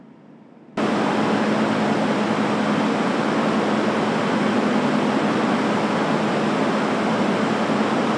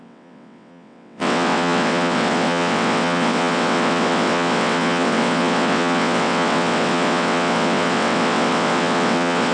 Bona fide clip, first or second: first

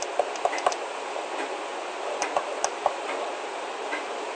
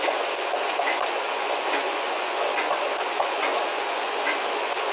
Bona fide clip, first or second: first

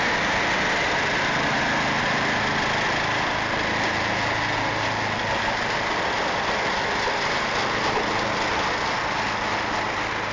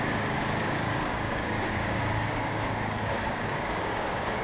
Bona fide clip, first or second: first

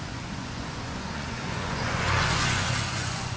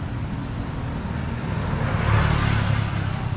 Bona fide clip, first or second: second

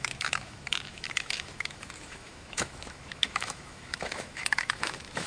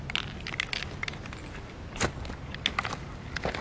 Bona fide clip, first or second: second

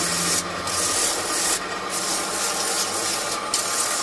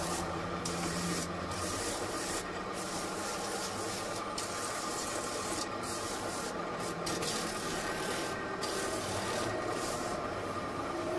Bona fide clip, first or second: first